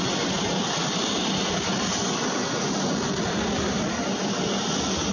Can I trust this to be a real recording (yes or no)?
yes